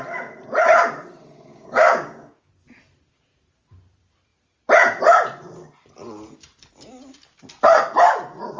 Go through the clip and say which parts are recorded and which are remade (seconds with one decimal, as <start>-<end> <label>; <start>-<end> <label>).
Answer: 0.0-1.5 recorded; 1.5-2.5 remade; 2.5-8.6 recorded